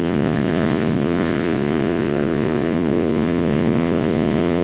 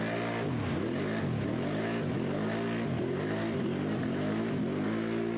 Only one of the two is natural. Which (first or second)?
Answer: second